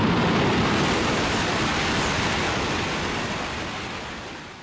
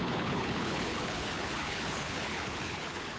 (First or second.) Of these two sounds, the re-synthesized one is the second